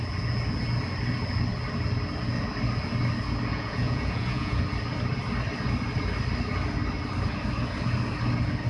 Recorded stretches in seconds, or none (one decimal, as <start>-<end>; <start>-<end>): 0.0-3.5; 4.6-8.7